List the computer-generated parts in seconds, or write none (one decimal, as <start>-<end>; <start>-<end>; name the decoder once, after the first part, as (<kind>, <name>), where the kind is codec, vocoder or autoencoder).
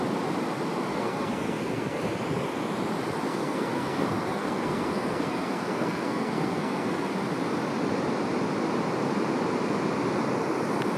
0.9-2.0 (codec, SNAC); 3.3-7.1